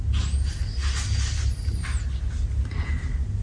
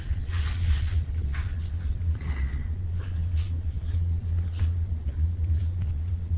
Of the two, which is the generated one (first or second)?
second